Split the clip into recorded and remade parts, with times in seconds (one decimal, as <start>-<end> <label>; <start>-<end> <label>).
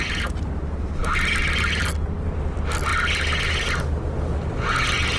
0.0-5.2 recorded